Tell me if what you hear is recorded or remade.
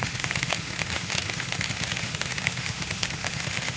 remade